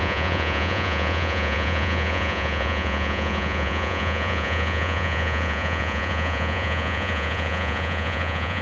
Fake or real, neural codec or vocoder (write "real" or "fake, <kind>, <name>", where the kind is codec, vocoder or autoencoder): fake, vocoder, Vocos